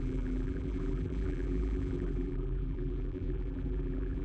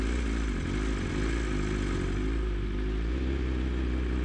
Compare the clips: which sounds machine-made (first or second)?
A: first